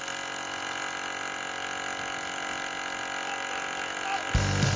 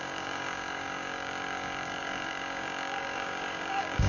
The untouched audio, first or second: first